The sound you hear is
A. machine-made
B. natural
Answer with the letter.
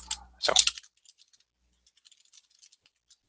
B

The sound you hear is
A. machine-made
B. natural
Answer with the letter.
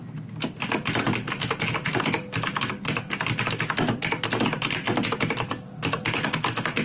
B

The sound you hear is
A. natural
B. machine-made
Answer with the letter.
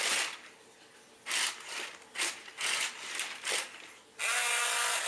A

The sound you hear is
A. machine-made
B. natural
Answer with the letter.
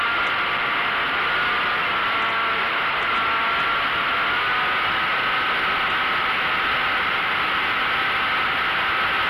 B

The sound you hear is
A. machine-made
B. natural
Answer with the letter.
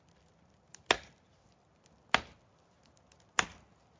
B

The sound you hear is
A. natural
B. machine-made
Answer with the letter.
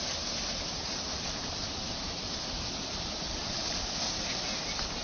B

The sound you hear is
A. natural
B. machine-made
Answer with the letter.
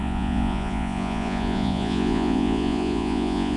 B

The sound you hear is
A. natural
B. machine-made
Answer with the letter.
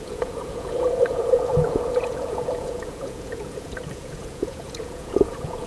B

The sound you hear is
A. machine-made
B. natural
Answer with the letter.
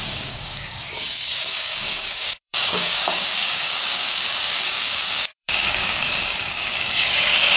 A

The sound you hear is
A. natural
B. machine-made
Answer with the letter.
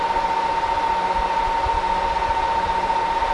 A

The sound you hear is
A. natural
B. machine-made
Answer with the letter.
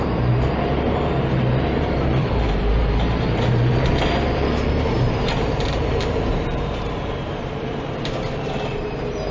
B